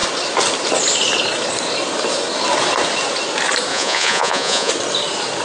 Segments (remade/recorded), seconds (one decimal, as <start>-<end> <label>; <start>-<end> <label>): 0.0-3.7 recorded; 3.7-4.7 remade; 4.7-5.4 recorded